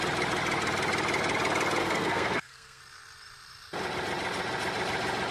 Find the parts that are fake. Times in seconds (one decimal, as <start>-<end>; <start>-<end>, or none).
1.8-2.8